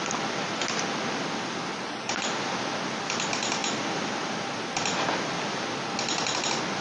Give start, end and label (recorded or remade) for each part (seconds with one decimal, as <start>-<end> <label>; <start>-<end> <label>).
0.0-6.8 recorded